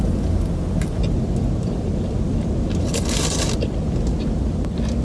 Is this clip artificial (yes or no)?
no